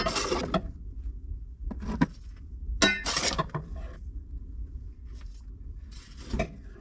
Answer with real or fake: real